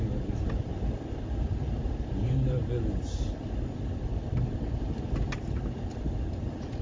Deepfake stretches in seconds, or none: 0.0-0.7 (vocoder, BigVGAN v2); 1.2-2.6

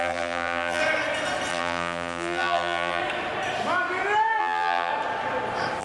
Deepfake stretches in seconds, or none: 0.0-0.8 (vocoder, BigVGAN v2); 1.5-3.0; 4.4-4.9

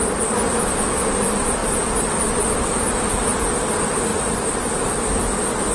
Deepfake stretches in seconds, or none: 4.1-4.8 (vocoder, BigVGAN v2)

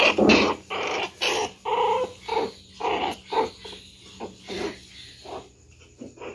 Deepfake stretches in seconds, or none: 0.0-1.7 (vocoder, BigVGAN v2); 4.5-5.3

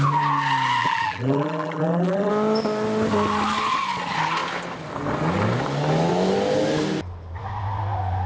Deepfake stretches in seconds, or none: 0.8-2.3 (vocoder, BigVGAN v2)